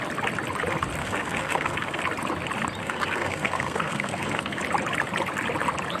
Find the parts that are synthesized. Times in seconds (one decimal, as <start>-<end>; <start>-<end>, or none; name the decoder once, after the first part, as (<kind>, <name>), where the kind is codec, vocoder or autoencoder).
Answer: 1.0-2.0 (codec, SNAC); 2.8-4.6